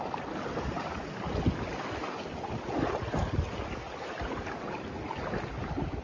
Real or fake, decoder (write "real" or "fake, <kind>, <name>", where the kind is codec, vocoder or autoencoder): real